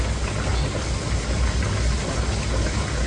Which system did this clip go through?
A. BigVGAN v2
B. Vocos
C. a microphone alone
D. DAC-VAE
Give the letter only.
C